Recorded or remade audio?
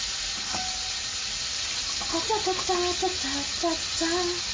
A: recorded